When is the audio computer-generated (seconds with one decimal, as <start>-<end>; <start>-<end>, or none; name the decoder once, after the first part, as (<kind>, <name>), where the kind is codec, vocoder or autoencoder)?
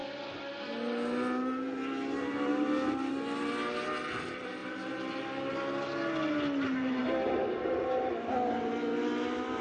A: none